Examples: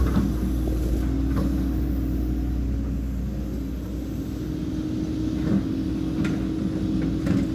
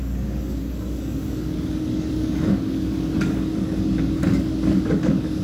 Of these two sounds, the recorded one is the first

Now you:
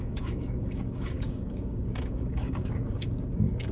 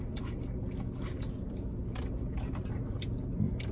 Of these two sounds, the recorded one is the second